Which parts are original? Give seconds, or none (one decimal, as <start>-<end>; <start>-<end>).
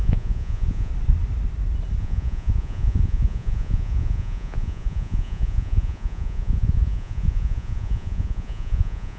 0.9-2.0